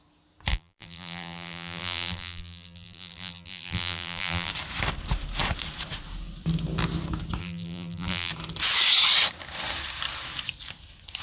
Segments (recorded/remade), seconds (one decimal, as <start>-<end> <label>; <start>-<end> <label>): 0.0-0.5 recorded; 0.5-4.5 remade; 4.5-7.4 recorded; 7.4-8.3 remade; 8.3-11.2 recorded